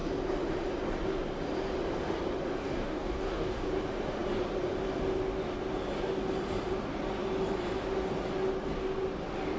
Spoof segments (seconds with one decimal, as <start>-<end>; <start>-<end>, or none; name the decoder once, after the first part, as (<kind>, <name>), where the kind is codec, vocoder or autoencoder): 2.6-3.7 (codec, DAC)